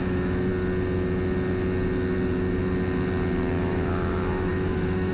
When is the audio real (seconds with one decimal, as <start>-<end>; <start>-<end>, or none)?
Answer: 0.5-3.6

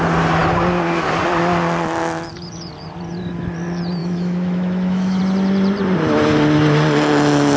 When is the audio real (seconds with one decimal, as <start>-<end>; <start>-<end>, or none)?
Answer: 0.0-4.0; 5.2-7.6

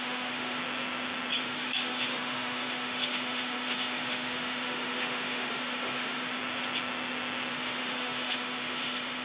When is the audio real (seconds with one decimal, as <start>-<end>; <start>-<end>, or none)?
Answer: 0.6-1.4; 6.3-7.5

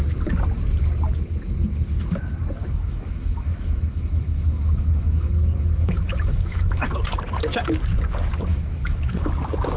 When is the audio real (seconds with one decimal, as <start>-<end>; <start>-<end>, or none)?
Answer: 0.0-2.6; 6.9-8.5; 9.3-9.8

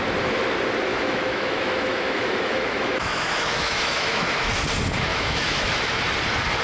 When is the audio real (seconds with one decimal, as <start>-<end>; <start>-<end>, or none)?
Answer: 0.0-0.9; 4.5-5.1; 6.0-6.6